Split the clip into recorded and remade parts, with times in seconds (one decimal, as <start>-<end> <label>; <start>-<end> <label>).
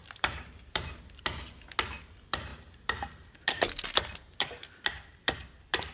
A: 0.0-1.0 remade; 1.0-5.9 recorded